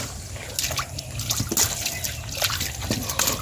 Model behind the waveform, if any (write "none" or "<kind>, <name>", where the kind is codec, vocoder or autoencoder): none